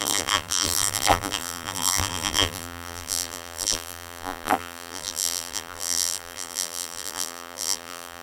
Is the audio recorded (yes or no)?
no